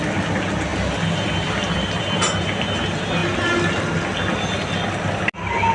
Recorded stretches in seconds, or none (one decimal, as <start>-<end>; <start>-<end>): 0.0-0.7; 2.0-5.7